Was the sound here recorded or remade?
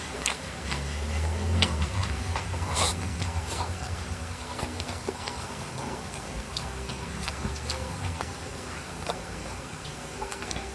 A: remade